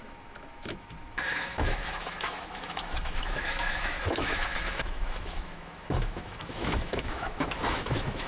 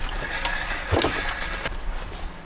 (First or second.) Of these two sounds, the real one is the second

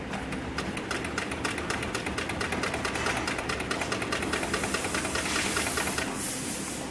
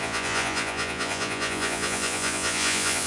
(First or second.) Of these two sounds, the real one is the first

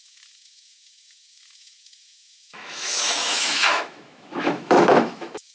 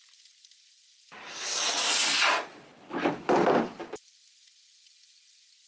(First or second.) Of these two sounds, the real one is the second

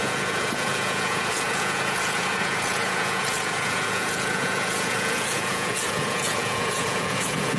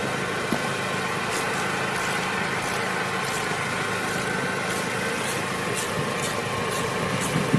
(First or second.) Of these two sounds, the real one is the second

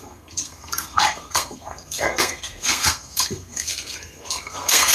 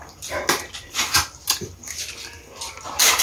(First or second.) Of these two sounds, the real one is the second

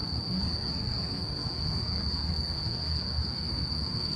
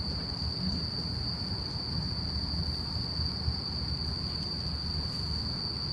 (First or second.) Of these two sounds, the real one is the second